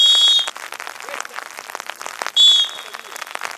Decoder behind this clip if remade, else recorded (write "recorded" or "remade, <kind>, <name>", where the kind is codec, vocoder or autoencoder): recorded